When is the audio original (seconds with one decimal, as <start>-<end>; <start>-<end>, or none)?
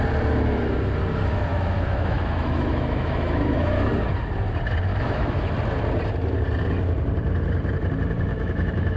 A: 0.0-1.5; 3.9-4.9; 5.5-8.3